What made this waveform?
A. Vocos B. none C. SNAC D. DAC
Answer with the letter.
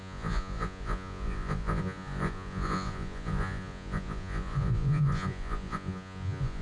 A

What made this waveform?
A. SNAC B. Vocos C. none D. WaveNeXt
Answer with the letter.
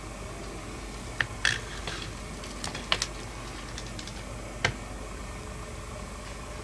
C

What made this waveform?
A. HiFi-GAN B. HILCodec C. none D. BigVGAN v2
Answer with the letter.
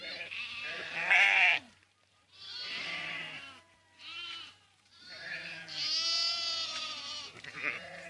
D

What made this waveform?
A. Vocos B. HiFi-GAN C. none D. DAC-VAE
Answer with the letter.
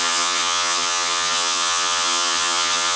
B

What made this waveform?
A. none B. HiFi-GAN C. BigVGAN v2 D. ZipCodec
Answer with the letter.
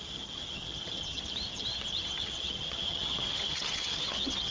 B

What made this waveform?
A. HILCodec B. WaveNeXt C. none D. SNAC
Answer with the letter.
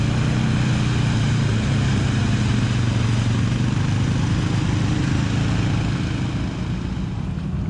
C